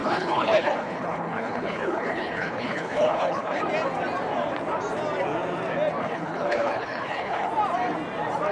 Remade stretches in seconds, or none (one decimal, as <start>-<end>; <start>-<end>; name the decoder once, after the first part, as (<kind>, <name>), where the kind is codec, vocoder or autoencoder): 0.0-3.6 (codec, HILCodec); 6.0-7.5